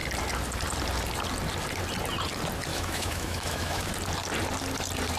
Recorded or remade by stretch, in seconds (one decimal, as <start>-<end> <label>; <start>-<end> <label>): 0.0-2.7 recorded; 2.7-3.9 remade; 3.9-5.2 recorded